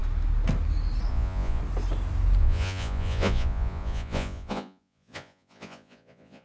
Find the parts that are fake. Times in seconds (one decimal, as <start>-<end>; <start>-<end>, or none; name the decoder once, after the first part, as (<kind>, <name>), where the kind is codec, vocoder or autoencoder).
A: 1.1-1.6 (vocoder, Vocos); 2.4-6.4